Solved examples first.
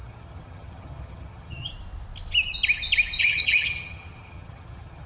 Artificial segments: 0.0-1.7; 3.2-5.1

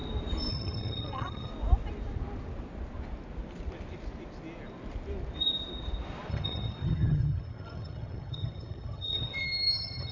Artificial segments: 0.5-1.5; 6.3-10.1